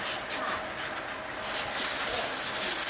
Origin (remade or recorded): recorded